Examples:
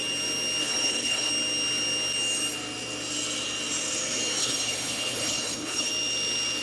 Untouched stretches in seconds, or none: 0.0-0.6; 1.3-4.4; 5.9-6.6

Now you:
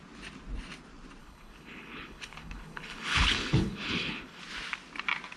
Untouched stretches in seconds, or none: 0.0-1.2; 4.4-5.4